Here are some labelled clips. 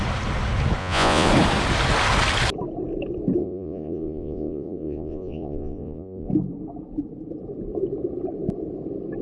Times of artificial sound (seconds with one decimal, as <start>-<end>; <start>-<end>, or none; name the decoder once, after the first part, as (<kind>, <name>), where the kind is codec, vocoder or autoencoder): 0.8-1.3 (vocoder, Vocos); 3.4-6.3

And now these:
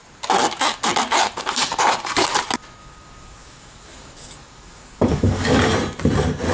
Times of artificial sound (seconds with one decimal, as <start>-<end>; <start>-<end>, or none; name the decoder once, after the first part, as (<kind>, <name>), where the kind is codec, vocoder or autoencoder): 2.8-5.6 (codec, DAC)

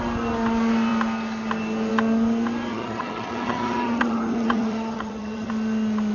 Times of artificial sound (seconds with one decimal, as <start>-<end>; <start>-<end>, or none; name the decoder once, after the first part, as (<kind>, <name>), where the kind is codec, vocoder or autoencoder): 2.7-5.5 (vocoder, HiFi-GAN)

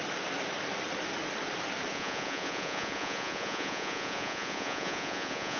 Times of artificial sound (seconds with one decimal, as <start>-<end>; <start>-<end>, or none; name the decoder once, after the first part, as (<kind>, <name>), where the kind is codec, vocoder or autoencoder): 1.9-5.6 (vocoder, Vocos)

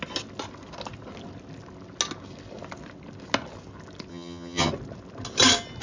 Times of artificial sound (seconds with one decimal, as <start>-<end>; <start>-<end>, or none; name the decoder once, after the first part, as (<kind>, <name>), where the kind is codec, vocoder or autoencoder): 4.1-4.7 (vocoder, HiFi-GAN)

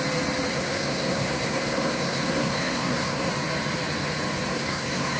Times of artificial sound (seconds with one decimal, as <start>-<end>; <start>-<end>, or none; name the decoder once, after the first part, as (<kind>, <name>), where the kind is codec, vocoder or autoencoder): 0.5-3.3 (codec, SNAC); 4.5-5.2